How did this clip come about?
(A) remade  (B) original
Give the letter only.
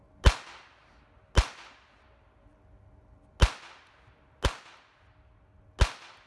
B